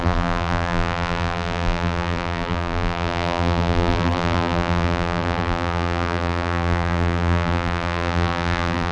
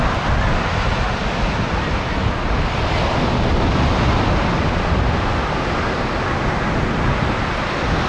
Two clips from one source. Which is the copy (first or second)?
first